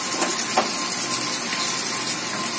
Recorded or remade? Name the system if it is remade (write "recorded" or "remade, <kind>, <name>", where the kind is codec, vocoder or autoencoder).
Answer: recorded